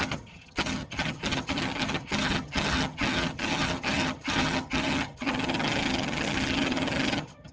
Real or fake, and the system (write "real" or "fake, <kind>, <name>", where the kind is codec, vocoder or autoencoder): fake, vocoder, HiFi-GAN